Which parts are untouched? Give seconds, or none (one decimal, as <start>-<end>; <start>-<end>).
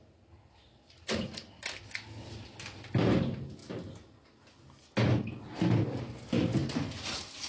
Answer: 0.0-7.5